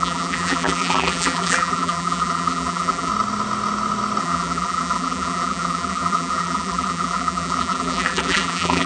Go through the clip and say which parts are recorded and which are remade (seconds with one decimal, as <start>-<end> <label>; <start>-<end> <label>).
0.0-3.1 remade; 3.1-4.2 recorded; 4.2-8.9 remade